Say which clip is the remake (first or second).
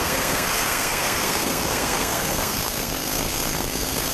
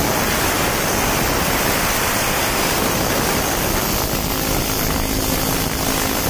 first